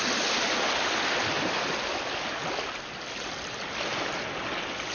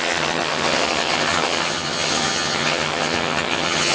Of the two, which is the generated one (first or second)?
second